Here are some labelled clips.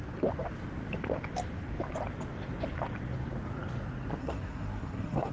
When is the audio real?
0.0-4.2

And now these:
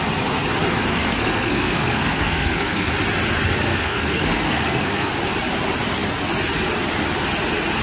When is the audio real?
0.0-0.9; 2.9-3.7; 5.1-7.8